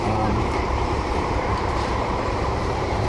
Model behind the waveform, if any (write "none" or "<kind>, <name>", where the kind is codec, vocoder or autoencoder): vocoder, BigVGAN v2